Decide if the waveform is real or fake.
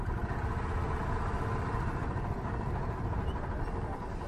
real